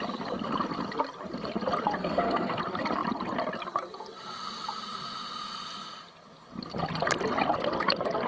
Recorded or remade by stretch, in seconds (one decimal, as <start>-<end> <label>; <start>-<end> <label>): 0.0-2.0 recorded; 2.0-2.6 remade; 2.6-8.3 recorded

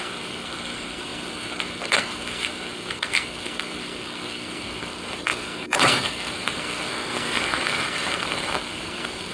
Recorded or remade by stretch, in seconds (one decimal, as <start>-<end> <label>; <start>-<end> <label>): 0.0-9.3 remade

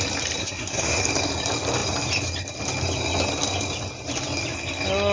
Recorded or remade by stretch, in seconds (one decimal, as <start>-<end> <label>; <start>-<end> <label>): 0.0-0.4 recorded; 0.4-1.0 remade; 1.0-5.1 recorded

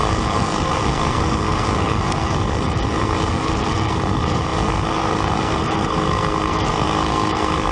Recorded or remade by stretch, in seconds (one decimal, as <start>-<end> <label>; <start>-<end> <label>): 0.0-7.7 remade

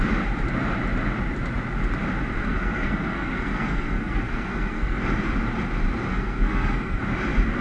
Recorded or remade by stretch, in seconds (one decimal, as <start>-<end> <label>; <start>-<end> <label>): 0.0-2.4 recorded; 2.4-5.0 remade; 5.0-6.1 recorded; 6.1-7.0 remade; 7.0-7.6 recorded

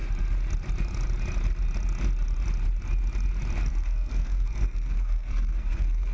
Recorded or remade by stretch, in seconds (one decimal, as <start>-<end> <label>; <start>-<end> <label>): 0.0-3.7 recorded; 3.7-6.1 remade

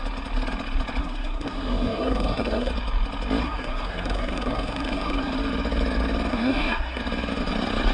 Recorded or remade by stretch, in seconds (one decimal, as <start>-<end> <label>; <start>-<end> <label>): 0.0-1.0 recorded; 1.0-2.7 remade; 2.7-3.4 recorded; 3.4-5.3 remade; 5.3-6.3 recorded; 6.3-7.0 remade; 7.0-7.9 recorded